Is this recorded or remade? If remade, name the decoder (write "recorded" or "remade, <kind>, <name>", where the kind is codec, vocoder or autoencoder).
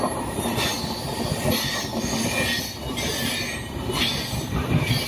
recorded